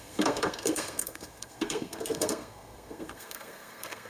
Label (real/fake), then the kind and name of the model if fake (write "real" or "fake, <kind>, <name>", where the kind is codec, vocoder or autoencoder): fake, codec, SNAC